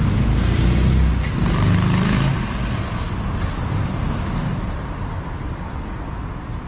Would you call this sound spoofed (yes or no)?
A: no